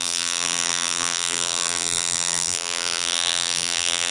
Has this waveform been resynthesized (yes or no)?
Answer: yes